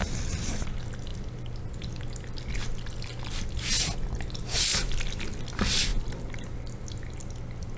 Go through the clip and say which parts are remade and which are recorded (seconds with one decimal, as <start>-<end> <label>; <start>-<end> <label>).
0.0-7.8 recorded